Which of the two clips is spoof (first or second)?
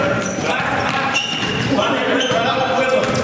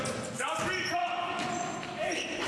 first